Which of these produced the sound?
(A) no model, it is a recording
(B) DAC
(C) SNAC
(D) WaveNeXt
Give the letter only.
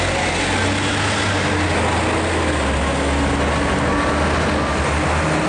A